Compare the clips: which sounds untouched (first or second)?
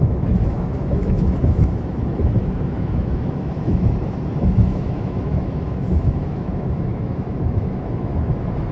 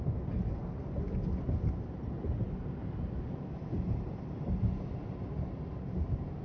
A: second